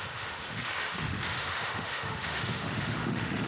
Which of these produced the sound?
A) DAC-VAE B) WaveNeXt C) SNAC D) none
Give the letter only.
A